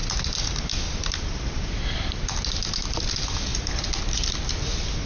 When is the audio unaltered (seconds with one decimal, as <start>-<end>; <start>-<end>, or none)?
0.0-5.1